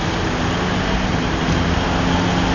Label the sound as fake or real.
real